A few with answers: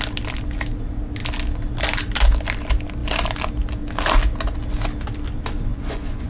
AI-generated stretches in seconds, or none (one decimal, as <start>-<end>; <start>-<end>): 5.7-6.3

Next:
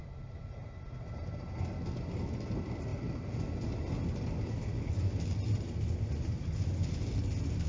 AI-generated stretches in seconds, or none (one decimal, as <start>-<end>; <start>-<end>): none

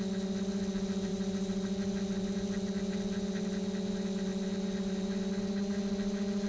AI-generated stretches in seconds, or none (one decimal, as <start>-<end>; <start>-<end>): none

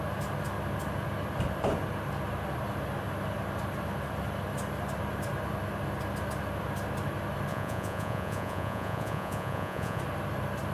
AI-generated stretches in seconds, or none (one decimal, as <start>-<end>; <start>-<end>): 7.5-10.0